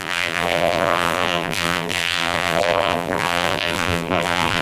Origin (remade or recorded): remade